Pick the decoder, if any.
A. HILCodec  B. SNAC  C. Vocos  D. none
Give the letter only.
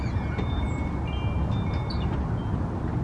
D